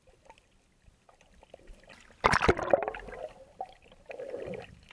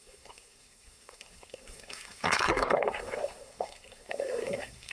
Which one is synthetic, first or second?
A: second